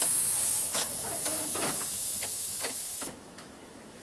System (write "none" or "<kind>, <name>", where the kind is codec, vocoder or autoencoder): autoencoder, DAC-VAE